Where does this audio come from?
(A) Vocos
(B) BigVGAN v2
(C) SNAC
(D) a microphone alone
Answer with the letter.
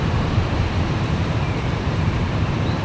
B